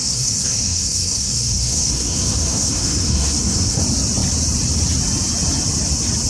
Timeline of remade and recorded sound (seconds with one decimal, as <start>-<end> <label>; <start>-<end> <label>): 0.0-3.8 remade; 3.8-6.3 recorded